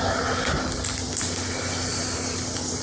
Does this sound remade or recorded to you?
recorded